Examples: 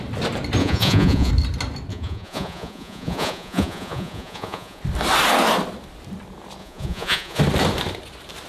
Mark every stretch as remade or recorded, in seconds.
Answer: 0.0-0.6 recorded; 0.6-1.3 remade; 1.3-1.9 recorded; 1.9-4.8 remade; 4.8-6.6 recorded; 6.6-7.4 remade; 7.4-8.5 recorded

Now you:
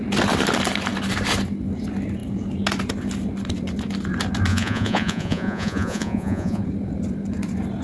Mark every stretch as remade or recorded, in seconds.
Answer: 0.0-4.5 recorded; 4.5-6.6 remade; 6.6-7.8 recorded

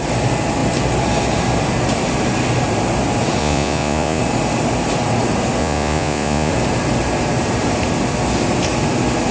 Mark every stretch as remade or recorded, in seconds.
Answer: 0.0-3.4 recorded; 3.4-4.2 remade; 4.2-5.6 recorded; 5.6-6.5 remade; 6.5-9.3 recorded